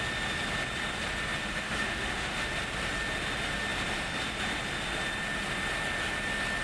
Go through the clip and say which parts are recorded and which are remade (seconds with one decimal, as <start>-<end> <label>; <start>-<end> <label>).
0.0-1.4 recorded; 1.4-2.5 remade; 2.5-6.6 recorded